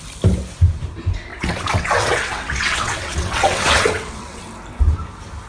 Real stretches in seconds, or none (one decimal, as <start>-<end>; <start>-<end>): 0.0-1.3; 4.4-5.5

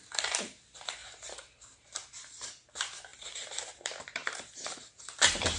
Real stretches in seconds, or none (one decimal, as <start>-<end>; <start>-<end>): none

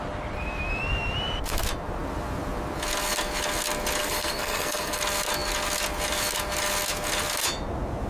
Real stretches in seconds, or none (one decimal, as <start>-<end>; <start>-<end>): 0.0-4.0; 5.0-8.1

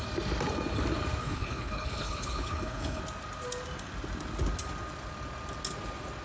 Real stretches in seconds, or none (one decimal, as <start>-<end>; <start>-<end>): 0.0-1.2; 3.0-6.2

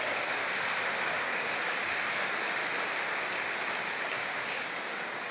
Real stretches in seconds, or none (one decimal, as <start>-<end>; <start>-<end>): 0.4-1.1; 2.6-4.0

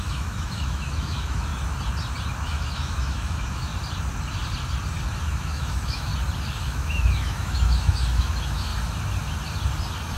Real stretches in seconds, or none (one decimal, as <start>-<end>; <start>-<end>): 1.5-2.4; 3.7-5.2; 6.1-6.6; 8.7-10.2

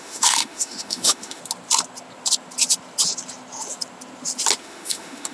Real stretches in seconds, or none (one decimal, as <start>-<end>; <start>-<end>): 1.4-4.6

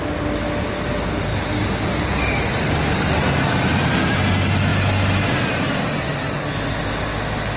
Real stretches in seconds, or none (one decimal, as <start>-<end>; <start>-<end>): 0.0-1.3; 3.1-3.7; 4.3-4.7; 5.7-7.6